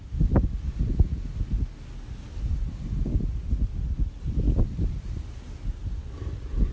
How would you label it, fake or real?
real